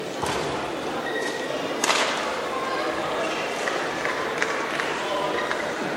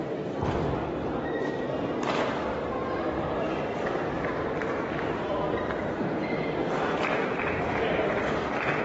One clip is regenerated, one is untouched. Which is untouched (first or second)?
first